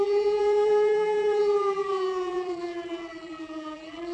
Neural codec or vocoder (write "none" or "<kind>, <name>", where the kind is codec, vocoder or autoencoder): vocoder, BigVGAN v2